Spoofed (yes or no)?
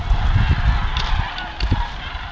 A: no